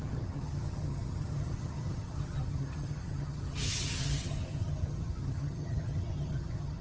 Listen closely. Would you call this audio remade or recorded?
remade